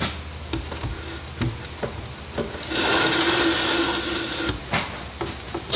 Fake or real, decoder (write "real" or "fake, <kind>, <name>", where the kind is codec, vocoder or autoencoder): real